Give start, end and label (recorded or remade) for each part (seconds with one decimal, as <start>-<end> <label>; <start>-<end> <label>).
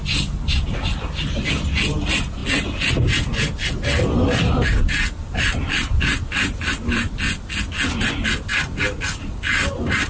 0.0-6.1 recorded; 6.1-7.2 remade; 7.2-10.1 recorded